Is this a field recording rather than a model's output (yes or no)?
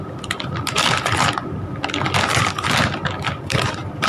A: yes